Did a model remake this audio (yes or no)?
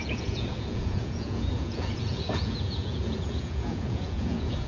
yes